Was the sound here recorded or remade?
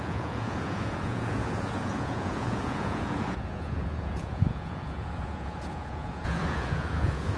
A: remade